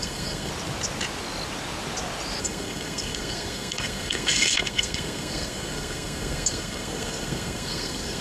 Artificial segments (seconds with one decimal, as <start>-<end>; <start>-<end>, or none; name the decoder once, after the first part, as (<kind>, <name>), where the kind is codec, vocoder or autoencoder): 0.0-0.5 (codec, SNAC); 2.4-8.2